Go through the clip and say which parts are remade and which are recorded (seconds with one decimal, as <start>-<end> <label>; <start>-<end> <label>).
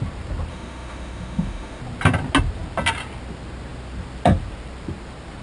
0.0-0.5 recorded; 0.5-1.8 remade; 1.8-5.4 recorded